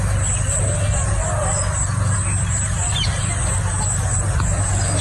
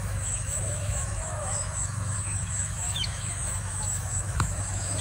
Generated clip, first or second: second